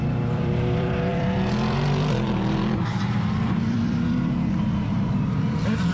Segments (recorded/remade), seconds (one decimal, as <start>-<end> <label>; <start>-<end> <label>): 0.0-5.9 remade